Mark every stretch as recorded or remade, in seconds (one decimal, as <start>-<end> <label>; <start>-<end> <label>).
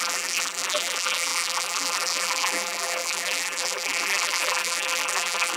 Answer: 0.0-5.6 remade